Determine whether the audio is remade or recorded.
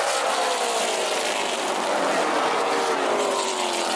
recorded